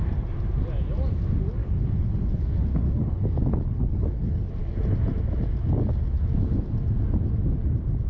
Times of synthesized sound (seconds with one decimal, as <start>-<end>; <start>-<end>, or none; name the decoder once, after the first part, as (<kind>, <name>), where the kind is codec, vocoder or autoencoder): 1.6-2.2 (codec, HILCodec); 2.7-4.5